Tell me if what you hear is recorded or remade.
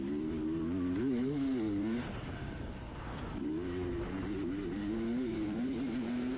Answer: remade